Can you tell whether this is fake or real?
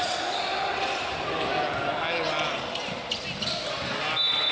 real